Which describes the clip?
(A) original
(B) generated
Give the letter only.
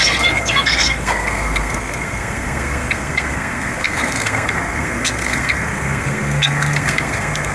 B